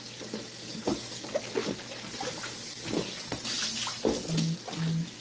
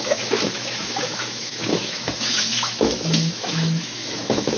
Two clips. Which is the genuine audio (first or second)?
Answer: first